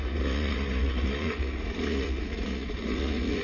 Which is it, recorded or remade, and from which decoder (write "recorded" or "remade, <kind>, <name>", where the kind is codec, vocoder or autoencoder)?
remade, vocoder, Vocos